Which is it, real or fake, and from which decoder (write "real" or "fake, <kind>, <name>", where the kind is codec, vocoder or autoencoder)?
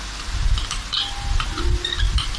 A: real